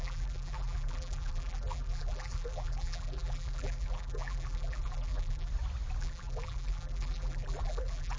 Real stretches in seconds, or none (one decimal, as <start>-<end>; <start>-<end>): 5.5-6.0